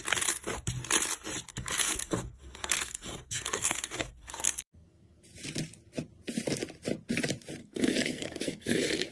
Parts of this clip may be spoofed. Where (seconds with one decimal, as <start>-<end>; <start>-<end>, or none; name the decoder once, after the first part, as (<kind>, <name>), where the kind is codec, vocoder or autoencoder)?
1.5-5.2 (codec, SNAC); 7.6-9.1